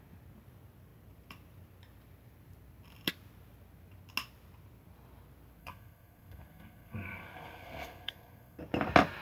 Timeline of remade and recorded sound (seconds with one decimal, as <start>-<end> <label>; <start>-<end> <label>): 0.0-5.6 recorded; 5.6-8.6 remade; 8.6-9.2 recorded